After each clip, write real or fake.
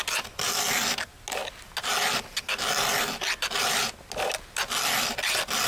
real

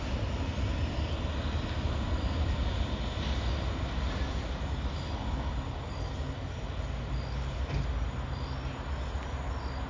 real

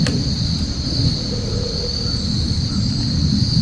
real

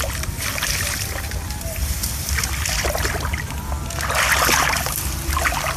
real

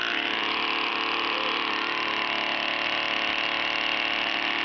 real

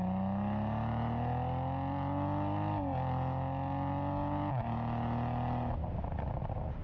real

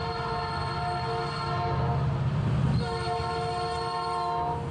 real